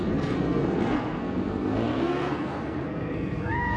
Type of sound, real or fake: fake